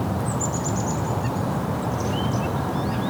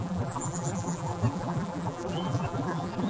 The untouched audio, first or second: first